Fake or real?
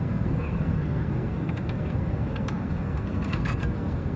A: fake